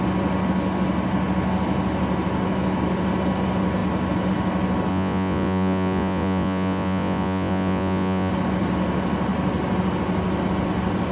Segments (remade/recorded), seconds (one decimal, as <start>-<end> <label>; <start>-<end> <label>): 0.0-4.9 recorded; 4.9-8.3 remade; 8.3-11.1 recorded